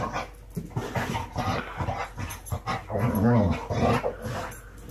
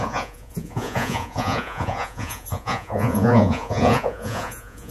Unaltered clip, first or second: first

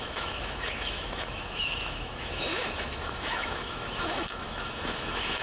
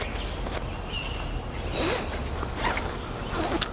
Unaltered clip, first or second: second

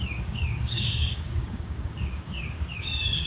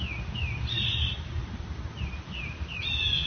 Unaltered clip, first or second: second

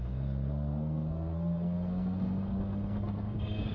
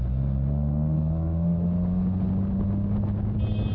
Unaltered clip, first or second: second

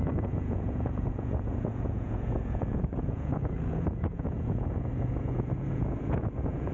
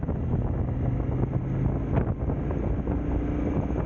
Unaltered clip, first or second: second